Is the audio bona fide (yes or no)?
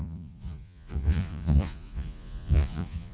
no